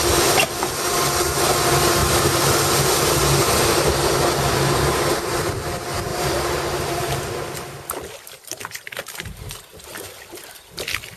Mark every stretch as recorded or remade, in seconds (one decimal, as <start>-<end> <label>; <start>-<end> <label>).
0.0-6.1 recorded; 6.1-7.5 remade; 7.5-11.2 recorded